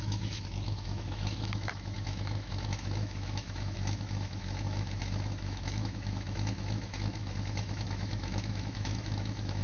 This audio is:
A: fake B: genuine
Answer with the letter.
A